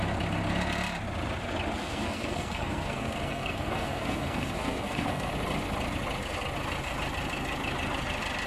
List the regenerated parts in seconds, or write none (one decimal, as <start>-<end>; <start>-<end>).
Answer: 1.8-5.3